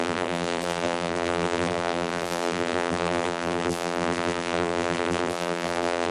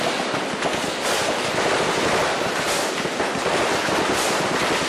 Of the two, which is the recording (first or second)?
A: second